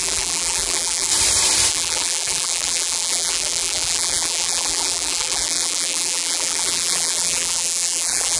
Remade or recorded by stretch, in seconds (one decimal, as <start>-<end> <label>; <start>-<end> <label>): 0.0-1.1 remade; 1.1-1.7 recorded; 1.7-8.4 remade